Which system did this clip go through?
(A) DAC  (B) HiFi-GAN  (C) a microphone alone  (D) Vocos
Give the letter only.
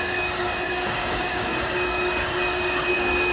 A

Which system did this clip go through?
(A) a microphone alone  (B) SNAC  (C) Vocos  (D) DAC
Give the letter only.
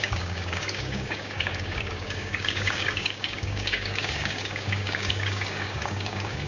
D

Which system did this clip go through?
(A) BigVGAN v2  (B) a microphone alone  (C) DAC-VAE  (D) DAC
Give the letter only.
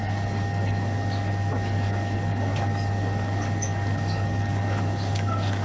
D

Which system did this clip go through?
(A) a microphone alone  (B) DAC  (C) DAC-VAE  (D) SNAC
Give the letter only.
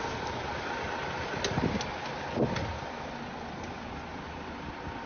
A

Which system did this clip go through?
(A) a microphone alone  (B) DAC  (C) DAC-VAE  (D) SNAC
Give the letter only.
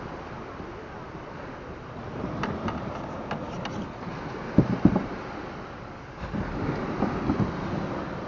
A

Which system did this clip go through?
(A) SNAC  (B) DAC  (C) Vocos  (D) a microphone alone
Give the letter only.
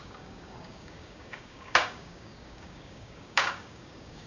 B